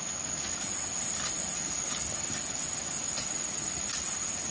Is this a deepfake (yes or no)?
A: no